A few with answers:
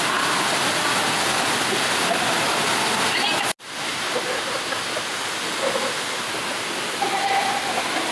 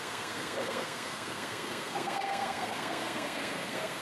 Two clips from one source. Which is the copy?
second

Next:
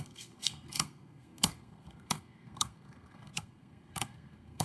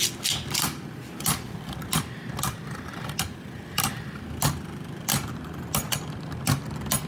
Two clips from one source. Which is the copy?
first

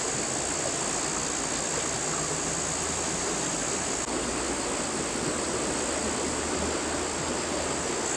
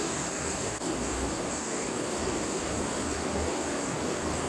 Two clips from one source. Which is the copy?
second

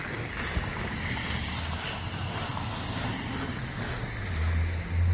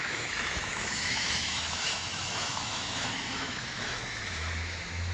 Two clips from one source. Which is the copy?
second